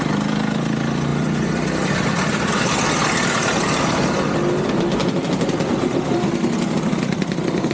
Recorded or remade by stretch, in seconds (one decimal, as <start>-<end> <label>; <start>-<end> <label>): 0.0-1.1 recorded; 1.1-2.6 remade; 2.6-5.0 recorded; 5.0-5.7 remade; 5.7-7.7 recorded